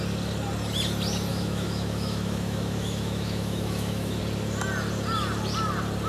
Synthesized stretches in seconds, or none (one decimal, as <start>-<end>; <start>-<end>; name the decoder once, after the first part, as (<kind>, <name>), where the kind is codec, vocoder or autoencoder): 1.3-4.2 (autoencoder, DAC-VAE)